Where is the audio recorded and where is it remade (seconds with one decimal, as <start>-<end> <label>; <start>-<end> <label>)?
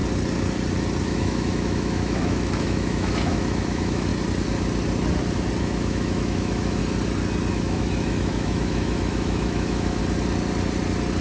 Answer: 0.0-1.0 recorded; 1.0-4.1 remade; 4.1-5.6 recorded; 5.6-6.8 remade; 6.8-7.5 recorded; 7.5-10.0 remade; 10.0-11.2 recorded